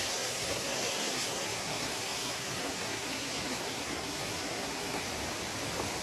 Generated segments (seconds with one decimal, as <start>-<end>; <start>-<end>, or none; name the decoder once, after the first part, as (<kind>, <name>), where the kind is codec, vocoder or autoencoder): 0.0-5.0 (codec, SNAC)